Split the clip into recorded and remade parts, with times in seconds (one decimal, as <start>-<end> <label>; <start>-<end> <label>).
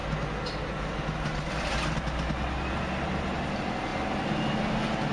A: 0.0-5.1 recorded